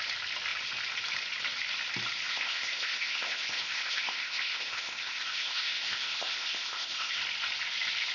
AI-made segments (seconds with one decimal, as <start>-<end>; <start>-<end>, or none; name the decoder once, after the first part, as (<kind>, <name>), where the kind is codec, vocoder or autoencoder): 2.3-7.2 (codec, ZipCodec)